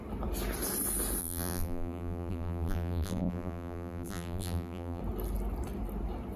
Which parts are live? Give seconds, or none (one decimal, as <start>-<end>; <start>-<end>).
0.0-1.2; 5.0-6.4